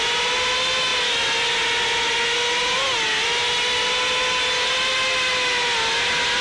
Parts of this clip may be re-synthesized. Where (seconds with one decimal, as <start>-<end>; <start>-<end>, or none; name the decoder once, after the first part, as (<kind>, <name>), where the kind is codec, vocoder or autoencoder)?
none